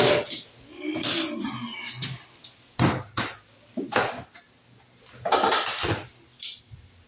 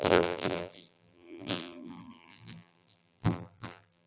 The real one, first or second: first